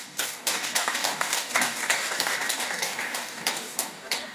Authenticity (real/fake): fake